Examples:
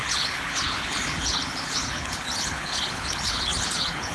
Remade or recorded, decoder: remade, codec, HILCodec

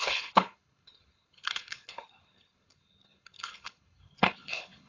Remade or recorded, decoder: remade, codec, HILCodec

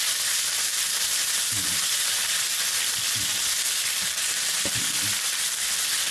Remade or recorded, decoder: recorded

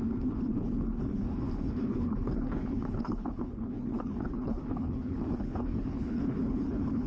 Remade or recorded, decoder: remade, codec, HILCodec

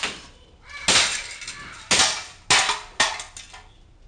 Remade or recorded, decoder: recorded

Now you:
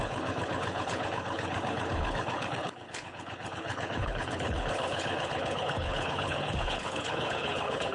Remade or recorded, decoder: remade, codec, HILCodec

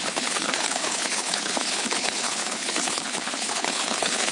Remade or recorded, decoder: remade, codec, HILCodec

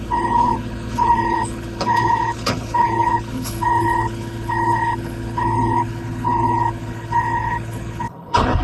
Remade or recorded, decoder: remade, codec, HILCodec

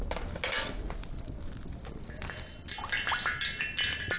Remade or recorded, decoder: recorded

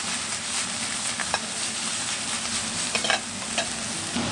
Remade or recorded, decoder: recorded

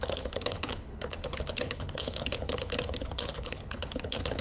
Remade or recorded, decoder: remade, codec, HILCodec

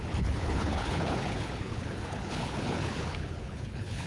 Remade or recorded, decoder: remade, codec, HILCodec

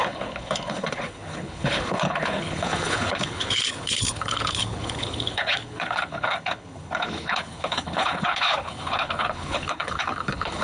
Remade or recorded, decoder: remade, codec, HILCodec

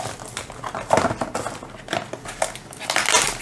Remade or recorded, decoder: recorded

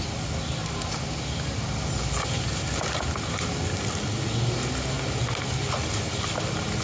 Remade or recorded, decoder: recorded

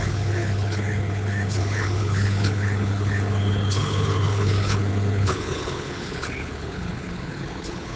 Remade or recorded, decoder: remade, codec, HILCodec